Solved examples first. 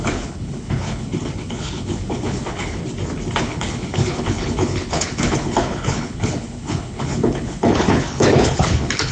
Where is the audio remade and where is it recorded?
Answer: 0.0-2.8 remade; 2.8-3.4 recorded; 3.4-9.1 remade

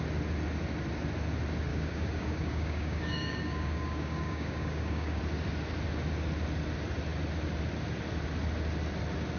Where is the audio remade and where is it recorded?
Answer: 0.0-1.7 recorded; 1.7-5.2 remade; 5.2-9.4 recorded

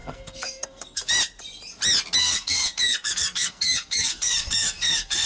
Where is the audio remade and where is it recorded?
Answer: 0.0-1.1 remade; 1.1-2.2 recorded; 2.2-5.3 remade